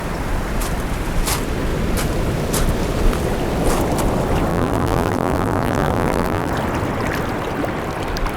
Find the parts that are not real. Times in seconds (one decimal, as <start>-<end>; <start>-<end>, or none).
4.5-6.5